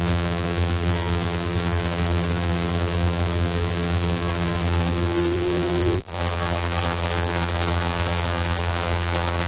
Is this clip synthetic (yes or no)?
yes